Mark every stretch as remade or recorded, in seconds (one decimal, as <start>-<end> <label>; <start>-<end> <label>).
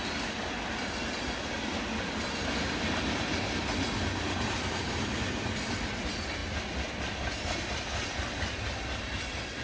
0.0-9.6 recorded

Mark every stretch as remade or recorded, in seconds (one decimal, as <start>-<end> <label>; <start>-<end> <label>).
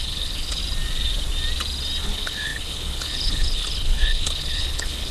0.0-0.6 remade; 0.6-2.0 recorded; 2.0-5.1 remade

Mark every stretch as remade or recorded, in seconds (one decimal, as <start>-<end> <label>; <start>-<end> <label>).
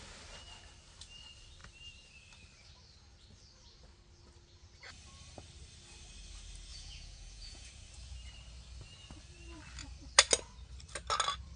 0.0-6.7 recorded; 6.7-7.7 remade; 7.7-11.6 recorded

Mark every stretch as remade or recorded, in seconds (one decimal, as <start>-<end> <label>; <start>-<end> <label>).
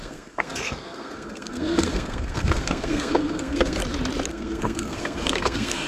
0.0-3.8 remade; 3.8-4.3 recorded; 4.3-5.9 remade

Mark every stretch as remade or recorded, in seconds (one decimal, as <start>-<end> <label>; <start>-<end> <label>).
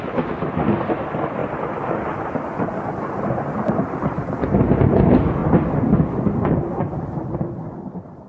0.0-1.4 recorded; 1.4-2.8 remade; 2.8-5.4 recorded; 5.4-7.1 remade; 7.1-8.3 recorded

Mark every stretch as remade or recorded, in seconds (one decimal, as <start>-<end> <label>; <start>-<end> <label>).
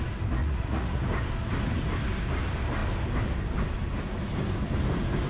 0.0-0.4 recorded; 0.4-1.0 remade; 1.0-5.3 recorded